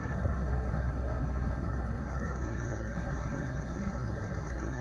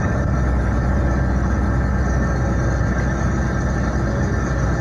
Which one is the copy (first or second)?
first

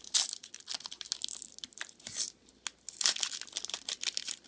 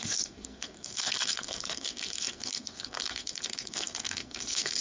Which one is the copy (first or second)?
second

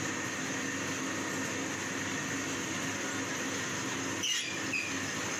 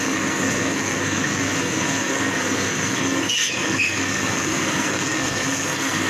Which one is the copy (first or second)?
second